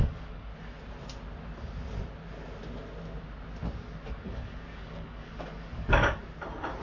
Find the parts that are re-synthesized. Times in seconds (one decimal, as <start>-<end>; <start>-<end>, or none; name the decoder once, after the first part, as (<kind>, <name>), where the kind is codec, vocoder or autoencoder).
0.0-0.5 (codec, DAC); 4.1-6.2

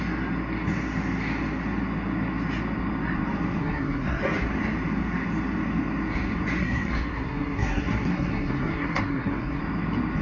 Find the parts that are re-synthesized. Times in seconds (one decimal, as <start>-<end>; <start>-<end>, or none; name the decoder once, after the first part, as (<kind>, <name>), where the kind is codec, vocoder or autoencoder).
3.6-4.2 (codec, SNAC); 6.6-9.6

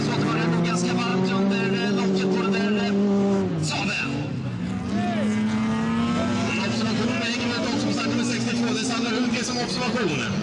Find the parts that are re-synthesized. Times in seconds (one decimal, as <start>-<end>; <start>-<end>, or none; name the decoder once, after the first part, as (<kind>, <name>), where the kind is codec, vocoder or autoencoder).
none

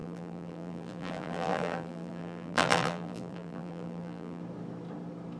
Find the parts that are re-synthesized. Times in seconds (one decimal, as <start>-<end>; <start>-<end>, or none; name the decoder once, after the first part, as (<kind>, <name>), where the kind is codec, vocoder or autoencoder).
0.0-4.4 (vocoder, BigVGAN v2)

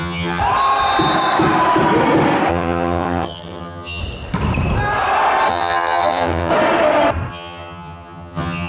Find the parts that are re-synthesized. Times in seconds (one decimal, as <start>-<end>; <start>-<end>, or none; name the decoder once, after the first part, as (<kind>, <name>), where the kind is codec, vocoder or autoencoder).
0.0-0.4 (vocoder, HiFi-GAN); 2.5-4.0; 5.5-6.5; 7.3-8.7

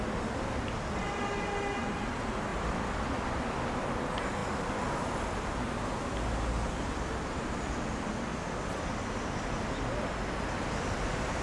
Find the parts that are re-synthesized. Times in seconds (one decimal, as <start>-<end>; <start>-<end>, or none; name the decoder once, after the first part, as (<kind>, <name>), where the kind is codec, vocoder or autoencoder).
2.5-3.1 (vocoder, BigVGAN v2); 4.4-5.2

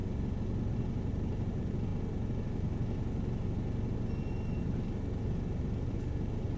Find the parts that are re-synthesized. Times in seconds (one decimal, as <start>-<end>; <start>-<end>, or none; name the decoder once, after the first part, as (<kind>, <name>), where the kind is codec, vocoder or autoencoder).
0.7-1.9 (vocoder, BigVGAN v2); 4.3-6.6

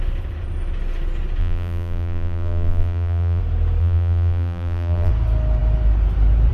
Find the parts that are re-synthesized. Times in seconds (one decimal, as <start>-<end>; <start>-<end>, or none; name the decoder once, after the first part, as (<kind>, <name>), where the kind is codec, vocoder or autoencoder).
1.4-3.4 (vocoder, BigVGAN v2); 3.8-5.1